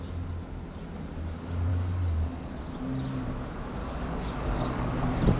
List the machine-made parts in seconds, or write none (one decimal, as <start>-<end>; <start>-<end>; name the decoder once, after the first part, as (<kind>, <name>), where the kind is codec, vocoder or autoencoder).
1.7-2.5 (codec, DAC); 3.8-4.9